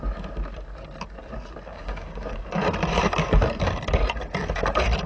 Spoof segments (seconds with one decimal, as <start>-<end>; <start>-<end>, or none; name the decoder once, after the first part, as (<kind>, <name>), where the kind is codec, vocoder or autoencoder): 1.7-2.4 (codec, DAC)